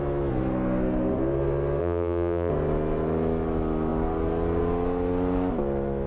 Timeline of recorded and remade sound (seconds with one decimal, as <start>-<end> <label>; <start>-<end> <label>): 0.0-1.8 recorded; 1.8-2.5 remade; 2.5-6.1 recorded